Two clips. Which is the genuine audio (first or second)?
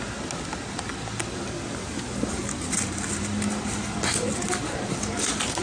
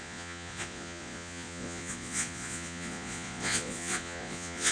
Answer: first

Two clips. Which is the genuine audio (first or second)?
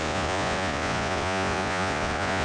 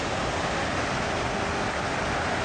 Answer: second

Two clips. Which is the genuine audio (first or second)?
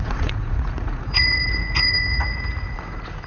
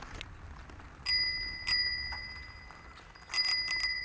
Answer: second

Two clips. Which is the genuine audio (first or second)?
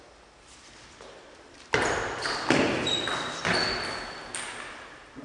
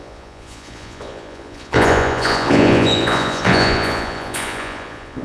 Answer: first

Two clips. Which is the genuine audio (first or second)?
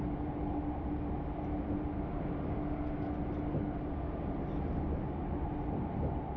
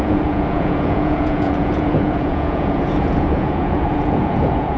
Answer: first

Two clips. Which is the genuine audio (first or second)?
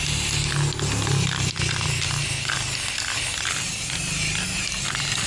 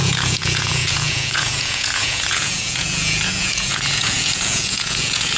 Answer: first